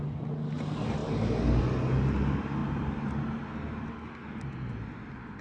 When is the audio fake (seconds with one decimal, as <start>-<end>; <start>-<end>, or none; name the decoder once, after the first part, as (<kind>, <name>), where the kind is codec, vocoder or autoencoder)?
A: 2.6-3.4 (vocoder, BigVGAN v2)